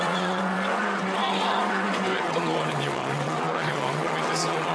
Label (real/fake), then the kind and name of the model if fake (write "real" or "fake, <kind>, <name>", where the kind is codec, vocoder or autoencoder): fake, vocoder, WaveNeXt